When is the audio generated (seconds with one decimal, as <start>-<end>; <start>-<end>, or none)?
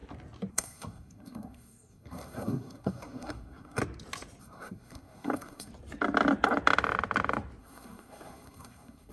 0.5-3.8; 4.4-5.7; 7.6-9.1